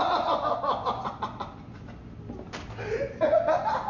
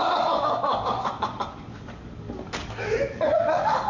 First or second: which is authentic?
first